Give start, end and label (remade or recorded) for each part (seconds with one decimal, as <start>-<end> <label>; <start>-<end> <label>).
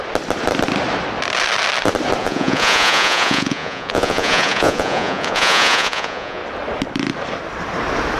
0.0-2.2 recorded; 2.2-6.4 remade; 6.4-8.2 recorded